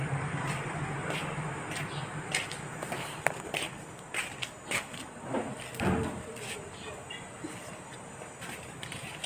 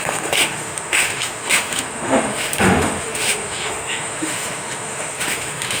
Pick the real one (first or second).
first